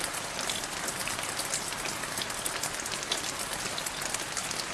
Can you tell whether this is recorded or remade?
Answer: recorded